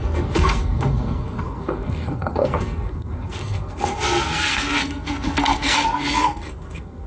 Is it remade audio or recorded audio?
remade